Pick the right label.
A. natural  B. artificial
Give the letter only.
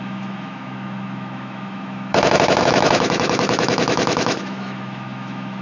B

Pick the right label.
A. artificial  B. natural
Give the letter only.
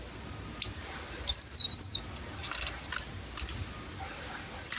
B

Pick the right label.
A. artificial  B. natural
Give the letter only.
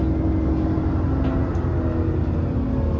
B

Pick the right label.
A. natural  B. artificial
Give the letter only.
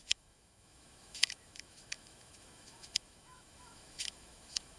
B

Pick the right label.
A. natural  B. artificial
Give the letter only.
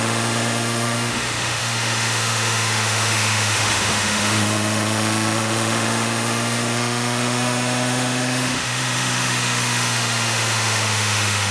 B